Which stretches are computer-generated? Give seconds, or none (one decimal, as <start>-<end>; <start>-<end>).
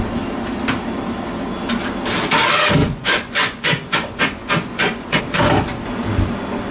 2.8-5.2